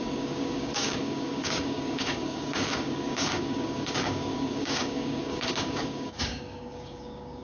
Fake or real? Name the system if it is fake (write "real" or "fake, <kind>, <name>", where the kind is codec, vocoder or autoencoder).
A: fake, codec, DAC